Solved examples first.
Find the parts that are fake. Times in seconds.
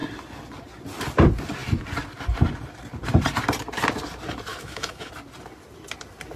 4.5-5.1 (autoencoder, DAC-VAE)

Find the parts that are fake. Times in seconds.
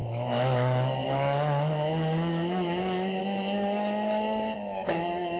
0.0-5.4 (autoencoder, DAC-VAE)